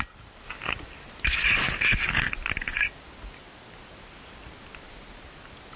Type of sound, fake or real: real